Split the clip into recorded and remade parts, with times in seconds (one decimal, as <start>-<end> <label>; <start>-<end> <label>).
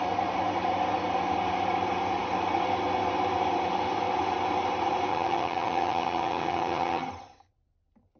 0.0-5.1 recorded; 5.1-7.1 remade; 7.1-8.2 recorded